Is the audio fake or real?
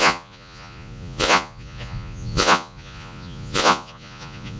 fake